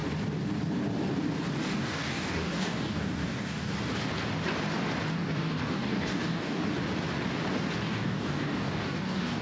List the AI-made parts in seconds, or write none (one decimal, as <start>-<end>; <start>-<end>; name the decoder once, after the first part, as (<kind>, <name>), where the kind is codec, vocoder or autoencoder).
1.6-3.7 (codec, DAC); 5.1-6.6; 7.9-9.4